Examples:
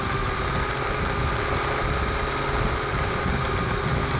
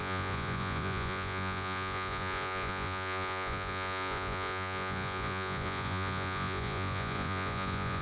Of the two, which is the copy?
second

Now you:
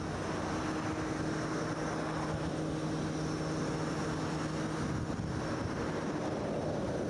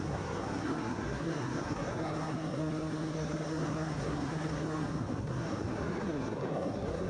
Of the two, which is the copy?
second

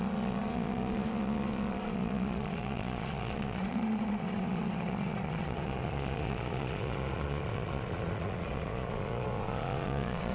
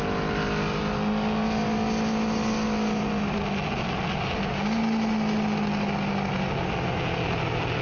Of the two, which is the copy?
first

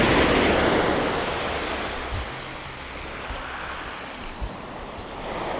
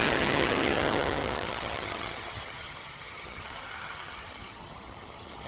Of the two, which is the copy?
second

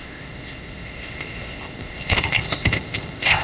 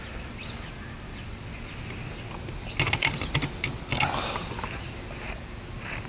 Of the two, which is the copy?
first